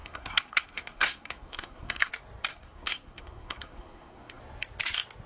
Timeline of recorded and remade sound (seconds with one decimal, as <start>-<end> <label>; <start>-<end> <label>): 0.0-2.1 remade; 2.1-2.5 recorded; 2.5-4.4 remade; 4.4-5.3 recorded